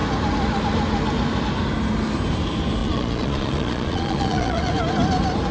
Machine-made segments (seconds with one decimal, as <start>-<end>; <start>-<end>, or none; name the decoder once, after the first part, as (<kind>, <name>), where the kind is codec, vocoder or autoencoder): 2.8-4.7 (vocoder, Vocos)